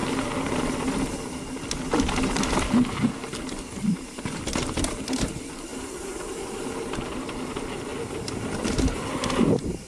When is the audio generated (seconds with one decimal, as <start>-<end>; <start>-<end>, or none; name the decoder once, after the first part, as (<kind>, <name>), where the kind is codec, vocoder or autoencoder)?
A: 2.3-3.2 (vocoder, BigVGAN v2); 3.8-9.9